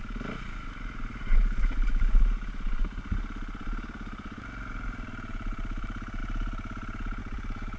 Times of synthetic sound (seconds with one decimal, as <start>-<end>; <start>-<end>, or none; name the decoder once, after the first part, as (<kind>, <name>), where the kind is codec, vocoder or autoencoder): none